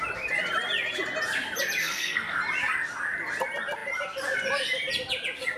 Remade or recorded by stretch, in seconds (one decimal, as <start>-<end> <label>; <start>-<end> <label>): 0.0-1.8 recorded; 1.8-2.4 remade; 2.4-5.6 recorded